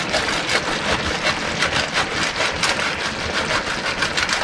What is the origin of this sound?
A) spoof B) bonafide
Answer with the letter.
B